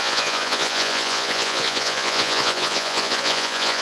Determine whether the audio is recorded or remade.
remade